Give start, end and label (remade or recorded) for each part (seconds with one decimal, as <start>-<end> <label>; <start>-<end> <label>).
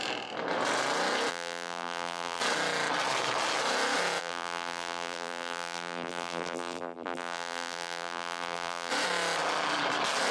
0.0-1.3 recorded; 1.3-2.4 remade; 2.4-4.2 recorded; 4.2-8.9 remade; 8.9-10.3 recorded